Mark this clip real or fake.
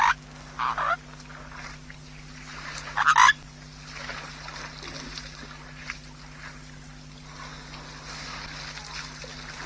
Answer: real